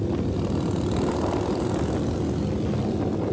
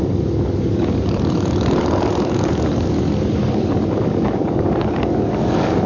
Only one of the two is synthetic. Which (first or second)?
second